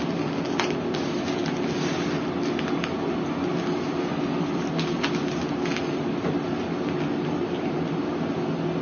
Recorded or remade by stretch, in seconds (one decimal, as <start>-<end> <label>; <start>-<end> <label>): 0.0-8.8 recorded